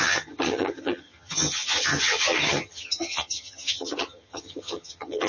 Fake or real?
fake